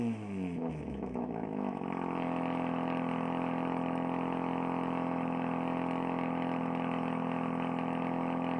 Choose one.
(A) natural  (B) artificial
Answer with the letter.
B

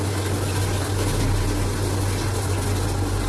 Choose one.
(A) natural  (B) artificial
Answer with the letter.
A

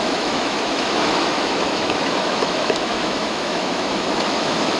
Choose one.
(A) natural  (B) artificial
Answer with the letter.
B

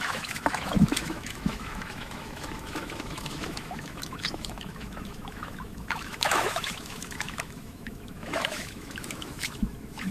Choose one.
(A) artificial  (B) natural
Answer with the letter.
A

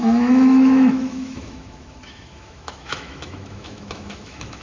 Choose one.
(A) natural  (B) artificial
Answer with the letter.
B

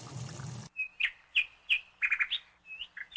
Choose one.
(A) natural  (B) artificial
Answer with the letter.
A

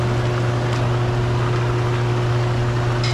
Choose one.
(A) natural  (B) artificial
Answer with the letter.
A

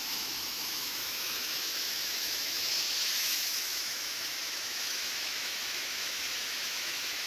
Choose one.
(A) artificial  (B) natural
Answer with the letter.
A